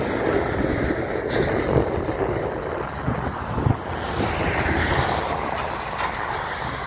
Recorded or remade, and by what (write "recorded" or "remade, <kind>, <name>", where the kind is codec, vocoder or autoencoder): recorded